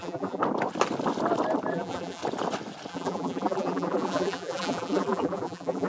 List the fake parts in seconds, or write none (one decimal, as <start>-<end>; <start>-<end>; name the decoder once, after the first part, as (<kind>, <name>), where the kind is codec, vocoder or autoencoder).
0.0-0.4 (vocoder, BigVGAN v2); 1.7-2.2; 2.9-5.9